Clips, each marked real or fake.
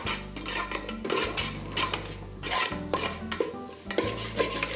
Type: real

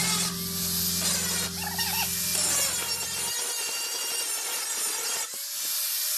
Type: real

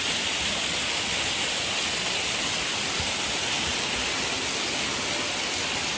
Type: real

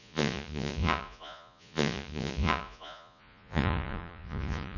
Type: fake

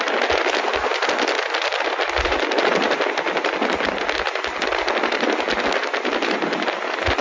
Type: real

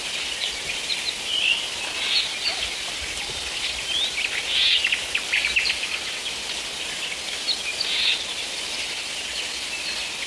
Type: real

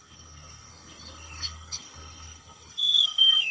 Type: fake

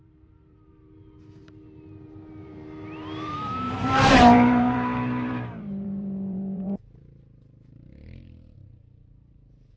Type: fake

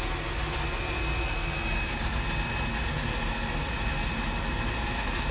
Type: real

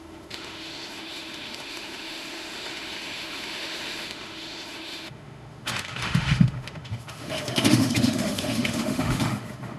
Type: fake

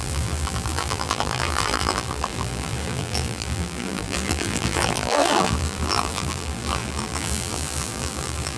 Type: fake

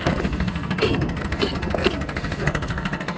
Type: fake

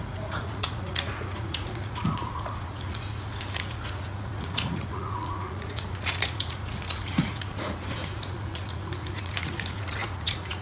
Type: fake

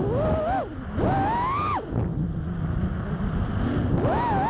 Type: real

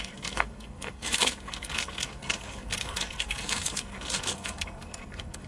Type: fake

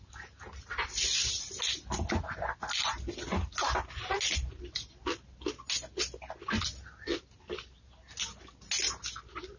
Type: real